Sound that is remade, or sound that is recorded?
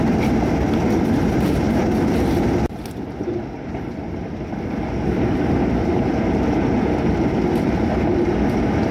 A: recorded